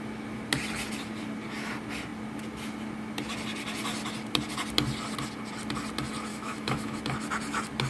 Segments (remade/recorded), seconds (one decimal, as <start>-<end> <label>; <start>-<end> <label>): 0.0-6.3 recorded; 6.3-7.0 remade; 7.0-7.9 recorded